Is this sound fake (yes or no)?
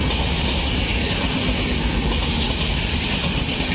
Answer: no